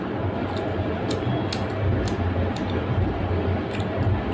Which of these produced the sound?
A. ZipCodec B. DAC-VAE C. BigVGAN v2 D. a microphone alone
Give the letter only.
D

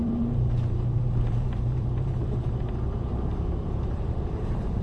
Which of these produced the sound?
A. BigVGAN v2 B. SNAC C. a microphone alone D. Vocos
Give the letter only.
A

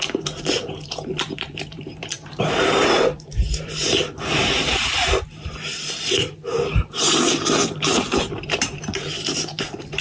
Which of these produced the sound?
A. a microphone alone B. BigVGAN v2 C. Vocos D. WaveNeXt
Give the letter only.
B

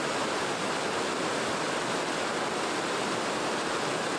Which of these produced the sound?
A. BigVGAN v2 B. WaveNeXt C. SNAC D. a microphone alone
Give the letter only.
D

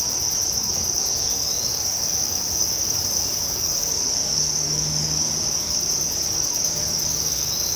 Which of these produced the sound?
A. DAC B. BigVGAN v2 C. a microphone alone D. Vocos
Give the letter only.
A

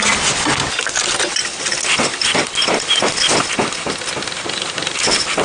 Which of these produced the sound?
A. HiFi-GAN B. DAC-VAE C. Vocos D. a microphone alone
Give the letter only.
D